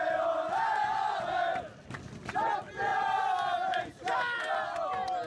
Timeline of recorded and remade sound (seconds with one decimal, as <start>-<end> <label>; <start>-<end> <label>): 0.0-5.3 recorded